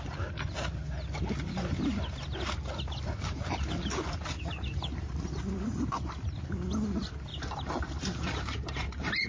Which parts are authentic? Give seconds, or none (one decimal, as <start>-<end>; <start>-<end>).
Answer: 0.0-7.3